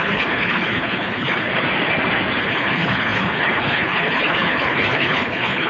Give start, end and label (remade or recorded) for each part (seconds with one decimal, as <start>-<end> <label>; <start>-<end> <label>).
0.0-1.5 remade; 1.5-2.4 recorded; 2.4-5.7 remade